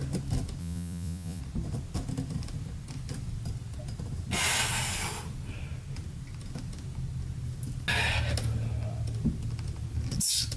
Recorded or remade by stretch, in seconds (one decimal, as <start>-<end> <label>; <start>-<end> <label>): 0.0-0.6 recorded; 0.6-1.4 remade; 1.4-10.6 recorded